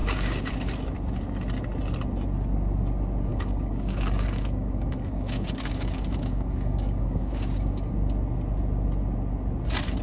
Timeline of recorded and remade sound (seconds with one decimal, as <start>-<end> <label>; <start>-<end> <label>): 0.0-0.5 remade; 0.5-3.3 recorded; 3.3-7.9 remade; 7.9-10.0 recorded

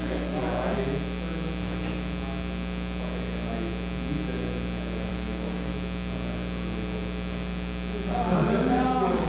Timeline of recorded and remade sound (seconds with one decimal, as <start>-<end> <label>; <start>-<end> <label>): 0.0-0.4 remade; 0.4-5.1 recorded; 5.1-5.7 remade; 5.7-8.1 recorded; 8.1-9.3 remade